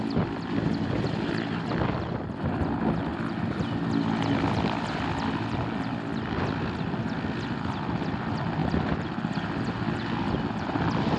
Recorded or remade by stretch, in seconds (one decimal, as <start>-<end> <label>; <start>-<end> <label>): 0.0-11.2 recorded